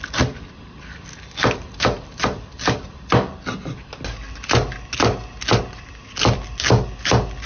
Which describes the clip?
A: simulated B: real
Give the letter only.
B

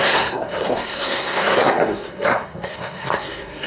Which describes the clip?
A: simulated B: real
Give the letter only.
A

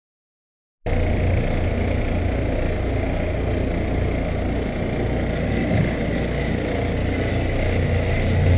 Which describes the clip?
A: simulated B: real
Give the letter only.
B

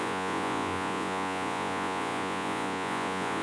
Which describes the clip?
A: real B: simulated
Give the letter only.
B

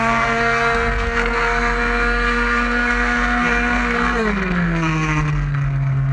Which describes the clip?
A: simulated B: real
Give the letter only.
A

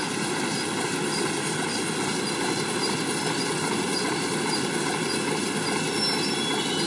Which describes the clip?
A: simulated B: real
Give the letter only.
B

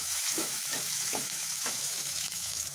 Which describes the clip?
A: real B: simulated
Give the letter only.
B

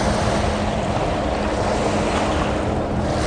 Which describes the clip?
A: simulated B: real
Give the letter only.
B